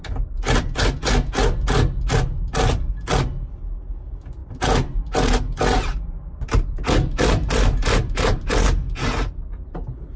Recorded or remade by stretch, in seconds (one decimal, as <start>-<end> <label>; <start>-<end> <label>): 0.0-10.2 recorded